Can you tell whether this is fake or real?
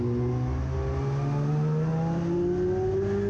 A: real